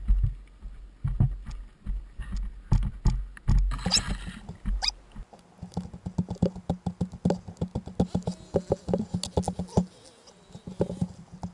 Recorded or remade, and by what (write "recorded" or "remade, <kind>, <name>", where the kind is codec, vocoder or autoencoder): recorded